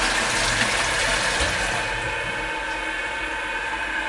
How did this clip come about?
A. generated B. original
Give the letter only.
B